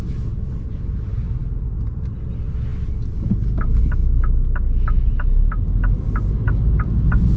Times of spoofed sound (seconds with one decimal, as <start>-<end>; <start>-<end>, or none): none